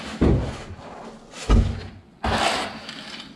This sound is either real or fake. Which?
real